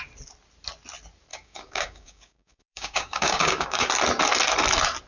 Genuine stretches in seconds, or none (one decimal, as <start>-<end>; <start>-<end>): 0.0-1.3; 3.9-5.1